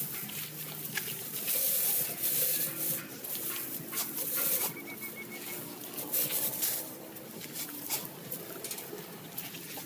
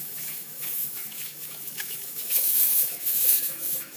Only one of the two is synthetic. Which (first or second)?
second